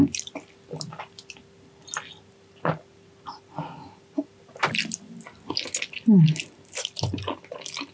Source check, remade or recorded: recorded